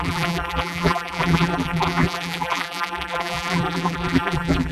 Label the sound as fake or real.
fake